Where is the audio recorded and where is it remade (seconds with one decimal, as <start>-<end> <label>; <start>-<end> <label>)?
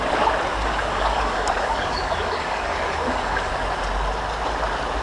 0.0-0.5 recorded; 0.5-3.5 remade; 3.5-5.0 recorded